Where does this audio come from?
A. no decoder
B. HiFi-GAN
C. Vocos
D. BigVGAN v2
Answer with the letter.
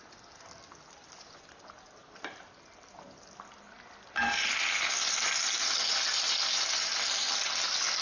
A